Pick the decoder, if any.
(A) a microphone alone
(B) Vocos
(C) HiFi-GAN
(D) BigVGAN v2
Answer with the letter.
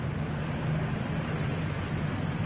A